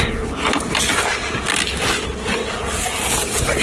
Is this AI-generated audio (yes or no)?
no